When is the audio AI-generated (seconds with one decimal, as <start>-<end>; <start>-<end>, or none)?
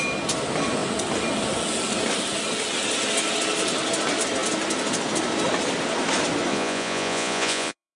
6.5-8.0